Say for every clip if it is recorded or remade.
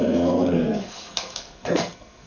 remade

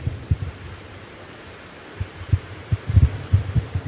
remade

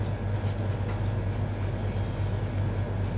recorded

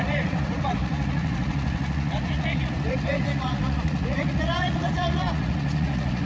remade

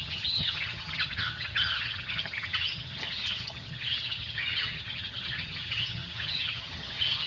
remade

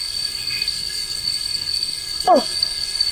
remade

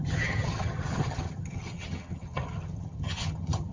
remade